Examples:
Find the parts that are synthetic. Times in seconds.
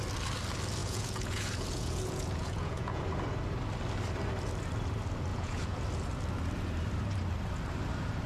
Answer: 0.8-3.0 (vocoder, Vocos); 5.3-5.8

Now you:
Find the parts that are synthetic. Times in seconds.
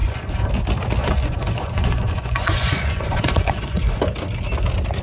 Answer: 0.0-0.5 (vocoder, Vocos); 1.0-4.0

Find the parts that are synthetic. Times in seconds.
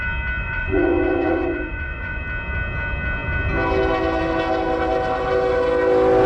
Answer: 0.4-2.2 (vocoder, Vocos)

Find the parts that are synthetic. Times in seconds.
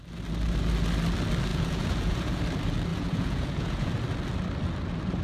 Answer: 1.5-2.4 (vocoder, Vocos); 2.9-3.9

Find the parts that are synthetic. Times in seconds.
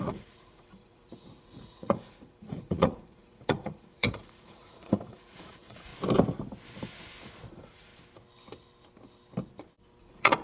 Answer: 0.0-5.9 (vocoder, Vocos); 7.5-7.9; 10.0-10.4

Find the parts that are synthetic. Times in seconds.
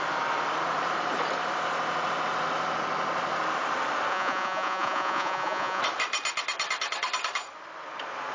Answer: 4.1-5.8 (vocoder, Vocos)